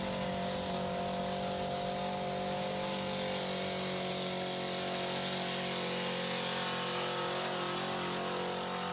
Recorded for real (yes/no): yes